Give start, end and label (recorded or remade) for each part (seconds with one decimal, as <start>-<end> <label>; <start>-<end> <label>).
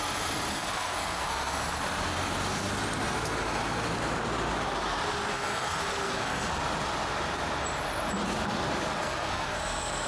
0.0-0.5 recorded; 0.5-1.8 remade; 1.8-5.3 recorded; 5.3-6.6 remade; 6.6-9.0 recorded; 9.0-10.1 remade